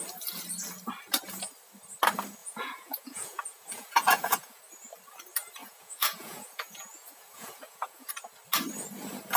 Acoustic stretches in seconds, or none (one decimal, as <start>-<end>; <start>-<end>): 0.0-2.4; 4.6-5.6; 8.1-9.4